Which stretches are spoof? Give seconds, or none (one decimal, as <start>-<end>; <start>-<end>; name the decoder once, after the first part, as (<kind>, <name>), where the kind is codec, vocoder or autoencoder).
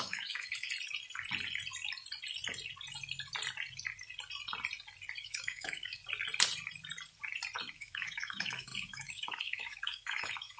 0.0-0.7 (autoencoder, DAC-VAE); 5.2-6.0; 7.6-10.6